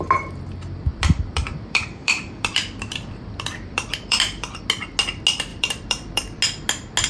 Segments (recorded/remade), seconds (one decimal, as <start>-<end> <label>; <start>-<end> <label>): 0.0-0.9 recorded; 0.9-4.6 remade; 4.6-5.5 recorded; 5.5-6.4 remade; 6.4-7.1 recorded